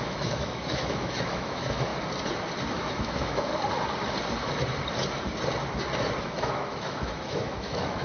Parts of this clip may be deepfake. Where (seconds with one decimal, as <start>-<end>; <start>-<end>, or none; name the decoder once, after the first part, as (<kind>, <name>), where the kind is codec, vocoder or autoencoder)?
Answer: 0.0-1.9 (autoencoder, DAC-VAE); 2.7-3.5; 6.2-8.0